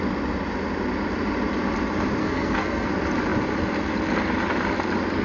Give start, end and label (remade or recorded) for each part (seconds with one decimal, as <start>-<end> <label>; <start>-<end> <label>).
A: 0.0-2.2 recorded; 2.2-2.9 remade; 2.9-5.2 recorded